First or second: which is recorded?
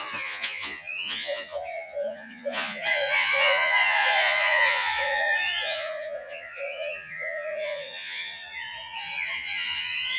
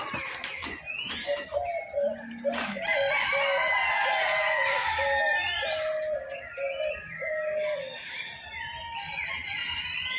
second